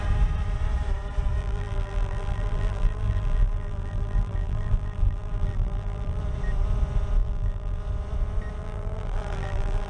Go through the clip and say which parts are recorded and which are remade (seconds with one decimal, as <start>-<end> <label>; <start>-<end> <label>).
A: 0.0-1.4 recorded; 1.4-6.2 remade; 6.2-7.2 recorded; 7.2-7.8 remade; 7.8-8.6 recorded; 8.6-9.9 remade